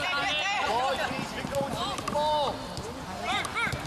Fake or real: real